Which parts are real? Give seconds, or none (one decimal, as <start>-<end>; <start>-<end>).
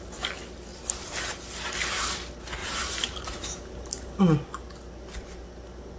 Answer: 0.0-2.6; 4.2-6.0